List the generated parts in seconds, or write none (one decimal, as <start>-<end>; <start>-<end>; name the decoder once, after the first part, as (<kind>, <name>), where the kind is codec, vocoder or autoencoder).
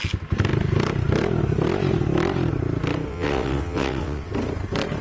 3.1-4.3 (vocoder, WaveNeXt)